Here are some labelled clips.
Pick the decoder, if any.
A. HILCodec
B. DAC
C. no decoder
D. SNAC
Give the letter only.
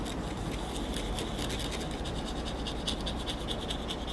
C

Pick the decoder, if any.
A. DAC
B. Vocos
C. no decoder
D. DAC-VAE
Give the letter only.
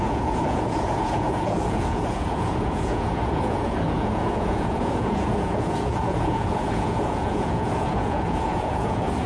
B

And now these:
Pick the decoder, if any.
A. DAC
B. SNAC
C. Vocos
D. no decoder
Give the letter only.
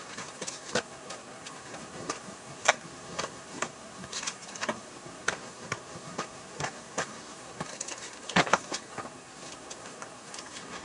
B